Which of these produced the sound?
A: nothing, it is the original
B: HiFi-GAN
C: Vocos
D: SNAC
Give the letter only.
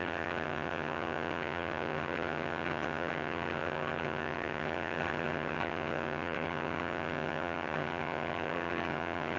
B